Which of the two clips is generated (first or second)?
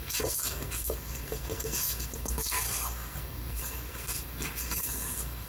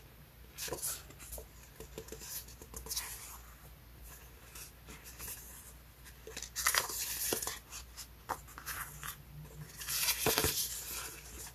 first